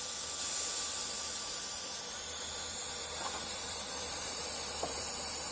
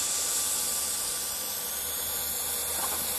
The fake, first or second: first